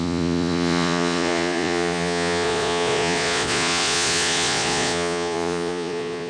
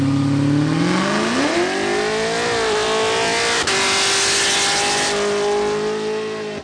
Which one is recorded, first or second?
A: second